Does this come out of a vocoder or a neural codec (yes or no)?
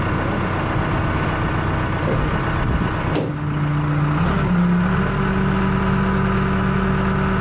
no